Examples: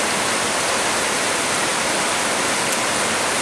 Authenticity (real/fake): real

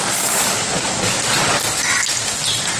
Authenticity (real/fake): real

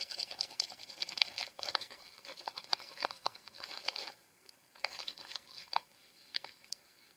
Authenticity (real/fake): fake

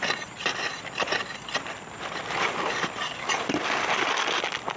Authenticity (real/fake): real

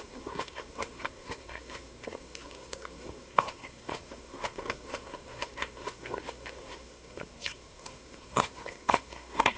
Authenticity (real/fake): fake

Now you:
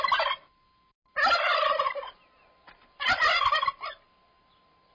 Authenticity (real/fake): real